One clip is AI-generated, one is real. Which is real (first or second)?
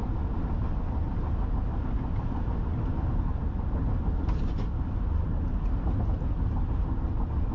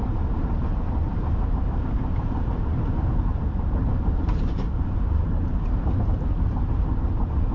first